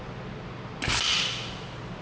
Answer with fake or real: real